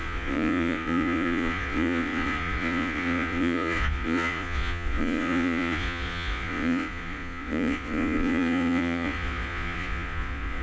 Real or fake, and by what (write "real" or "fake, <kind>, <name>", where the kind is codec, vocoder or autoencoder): fake, vocoder, Vocos